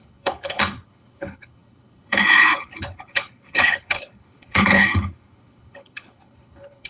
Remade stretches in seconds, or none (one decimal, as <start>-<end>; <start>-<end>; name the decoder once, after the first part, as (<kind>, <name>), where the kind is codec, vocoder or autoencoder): 0.0-6.9 (codec, HILCodec)